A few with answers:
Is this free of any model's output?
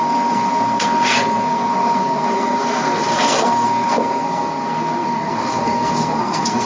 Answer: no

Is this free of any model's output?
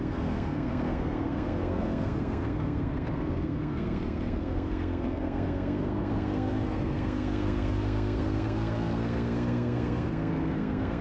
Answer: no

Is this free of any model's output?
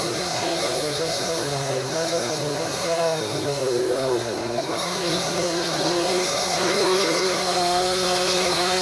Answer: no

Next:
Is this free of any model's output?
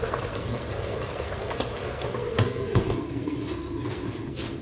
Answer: no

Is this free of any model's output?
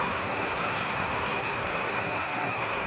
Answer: no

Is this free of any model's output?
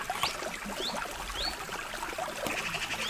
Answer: yes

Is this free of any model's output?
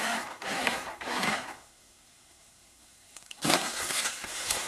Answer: no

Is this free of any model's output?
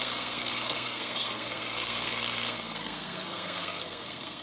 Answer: no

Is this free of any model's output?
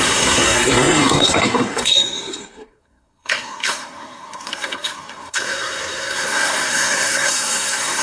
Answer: no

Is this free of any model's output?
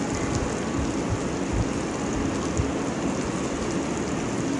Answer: yes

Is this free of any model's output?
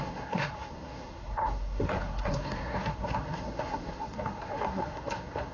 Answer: no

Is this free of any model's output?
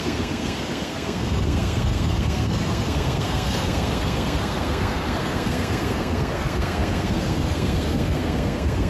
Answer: no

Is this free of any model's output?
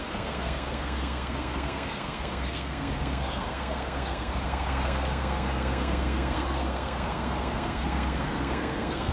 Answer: no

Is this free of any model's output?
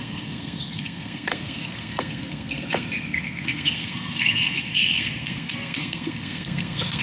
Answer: no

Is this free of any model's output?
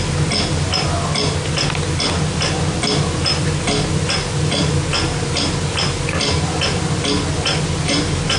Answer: yes